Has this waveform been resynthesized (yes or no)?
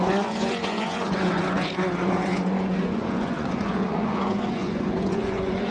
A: yes